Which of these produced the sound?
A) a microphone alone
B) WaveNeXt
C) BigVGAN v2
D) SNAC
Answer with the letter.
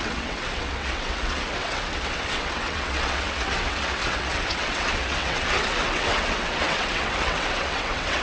B